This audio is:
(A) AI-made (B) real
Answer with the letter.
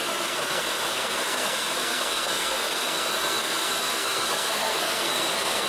A